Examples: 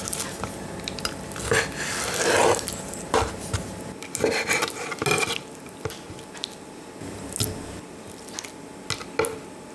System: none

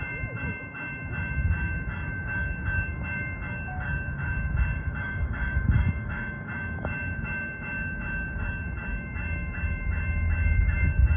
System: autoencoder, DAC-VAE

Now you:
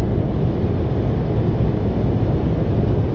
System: none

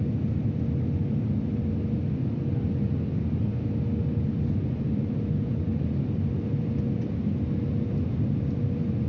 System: none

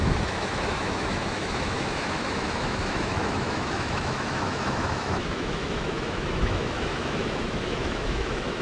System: autoencoder, DAC-VAE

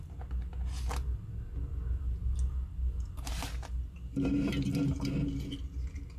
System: none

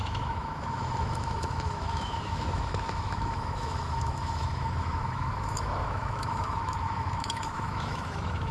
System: autoencoder, DAC-VAE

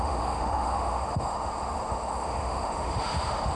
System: autoencoder, DAC-VAE